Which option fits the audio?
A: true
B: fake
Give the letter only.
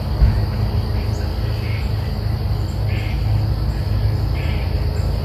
A